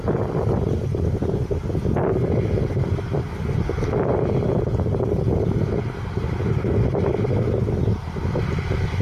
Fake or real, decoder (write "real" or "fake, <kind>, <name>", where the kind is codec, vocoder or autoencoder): real